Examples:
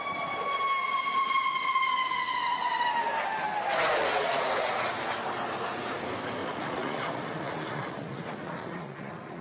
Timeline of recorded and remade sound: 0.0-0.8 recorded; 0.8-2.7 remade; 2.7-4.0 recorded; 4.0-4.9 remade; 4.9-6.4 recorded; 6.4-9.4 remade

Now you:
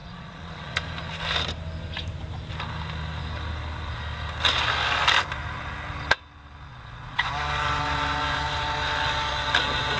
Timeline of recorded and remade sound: 0.0-0.7 remade; 0.7-6.7 recorded; 6.7-7.3 remade; 7.3-10.0 recorded

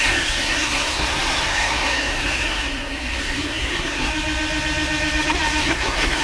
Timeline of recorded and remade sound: 0.0-4.1 remade; 4.1-5.6 recorded; 5.6-6.2 remade

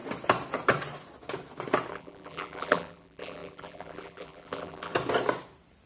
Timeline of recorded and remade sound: 0.0-1.9 recorded; 1.9-4.9 remade; 4.9-5.9 recorded

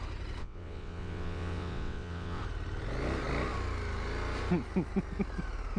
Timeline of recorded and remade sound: 0.0-0.4 recorded; 0.4-2.4 remade; 2.4-5.8 recorded

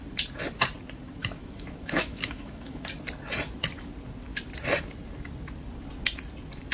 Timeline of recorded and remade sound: 0.0-1.2 recorded; 1.2-2.8 remade; 2.8-6.7 recorded

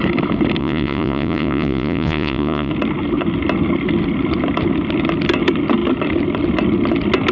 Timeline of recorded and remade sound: 0.0-0.6 recorded; 0.6-2.7 remade; 2.7-7.3 recorded

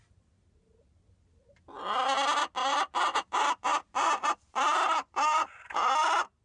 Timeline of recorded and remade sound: 0.0-2.6 recorded; 2.6-6.4 remade